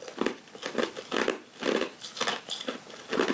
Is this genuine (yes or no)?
yes